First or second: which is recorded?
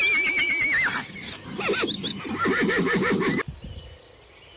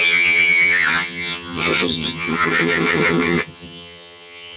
first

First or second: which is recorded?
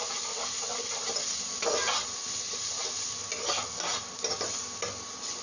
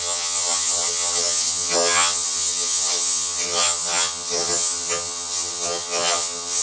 first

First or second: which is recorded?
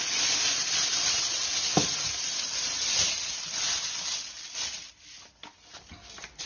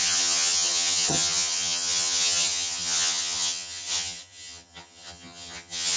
first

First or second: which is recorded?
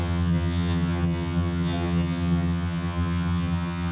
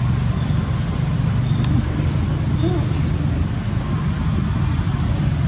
second